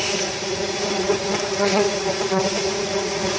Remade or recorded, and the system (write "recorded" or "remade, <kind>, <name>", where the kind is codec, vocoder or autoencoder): remade, vocoder, Vocos